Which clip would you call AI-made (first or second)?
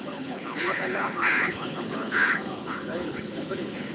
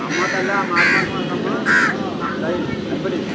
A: first